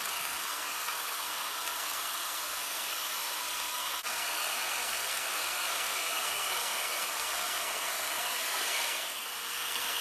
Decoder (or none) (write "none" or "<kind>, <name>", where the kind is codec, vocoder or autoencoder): codec, SNAC